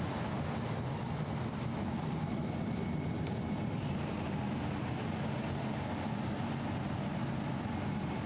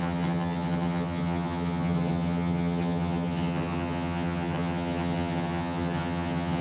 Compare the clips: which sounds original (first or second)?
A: first